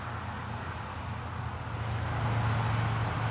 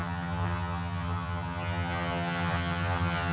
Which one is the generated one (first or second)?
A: second